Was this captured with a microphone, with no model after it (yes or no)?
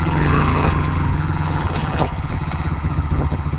no